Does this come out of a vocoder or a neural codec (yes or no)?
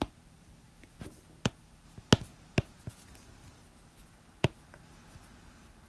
no